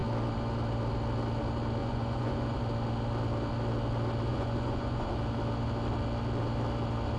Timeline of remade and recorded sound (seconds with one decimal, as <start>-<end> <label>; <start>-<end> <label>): 0.0-1.8 recorded; 1.8-2.6 remade; 2.6-4.3 recorded; 4.3-5.1 remade; 5.1-7.2 recorded